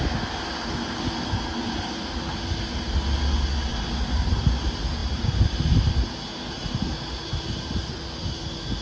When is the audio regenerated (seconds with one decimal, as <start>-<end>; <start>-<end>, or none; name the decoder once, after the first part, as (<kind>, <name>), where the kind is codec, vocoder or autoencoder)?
3.7-4.4 (vocoder, BigVGAN v2); 5.0-5.9